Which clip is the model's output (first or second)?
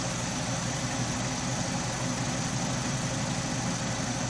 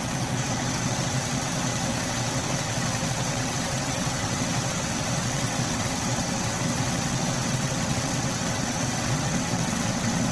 second